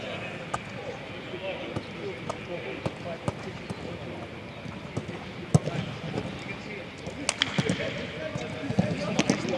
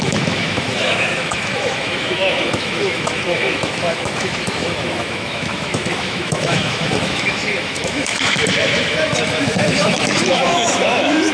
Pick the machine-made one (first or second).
second